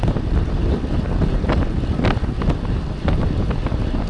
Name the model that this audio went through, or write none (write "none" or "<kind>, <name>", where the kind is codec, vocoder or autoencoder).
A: none